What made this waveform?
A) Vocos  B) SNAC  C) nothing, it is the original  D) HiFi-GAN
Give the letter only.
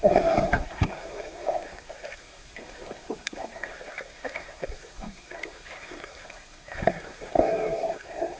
B